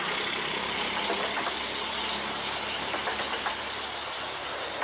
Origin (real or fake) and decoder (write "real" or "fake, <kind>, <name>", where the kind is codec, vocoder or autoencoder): real